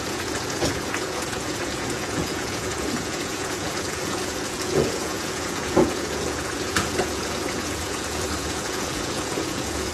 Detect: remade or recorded remade